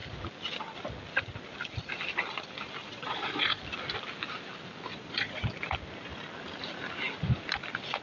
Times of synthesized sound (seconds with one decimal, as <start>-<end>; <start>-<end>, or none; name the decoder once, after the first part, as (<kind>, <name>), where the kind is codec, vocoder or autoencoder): 2.8-3.6 (vocoder, Vocos); 4.9-5.4